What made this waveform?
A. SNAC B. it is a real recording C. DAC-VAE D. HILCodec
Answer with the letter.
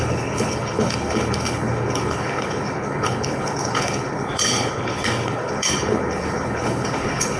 D